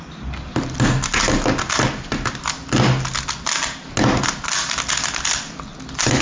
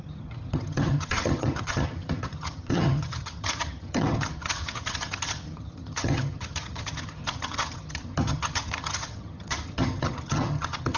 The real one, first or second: first